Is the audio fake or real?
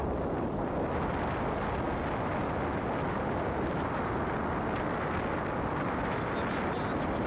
real